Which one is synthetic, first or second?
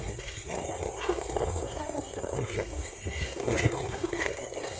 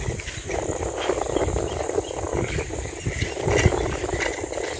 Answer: first